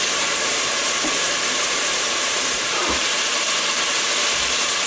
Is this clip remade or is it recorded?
remade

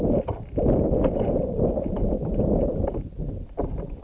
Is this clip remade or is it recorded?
recorded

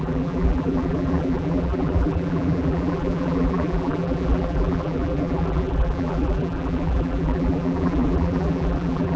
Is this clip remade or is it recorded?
remade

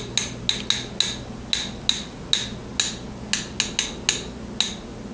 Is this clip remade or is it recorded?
recorded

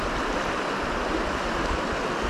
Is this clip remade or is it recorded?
remade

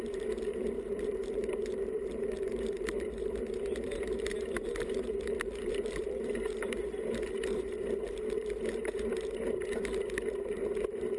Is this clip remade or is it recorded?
remade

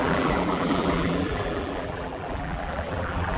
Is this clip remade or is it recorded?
remade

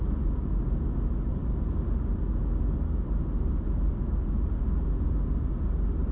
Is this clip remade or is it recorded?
remade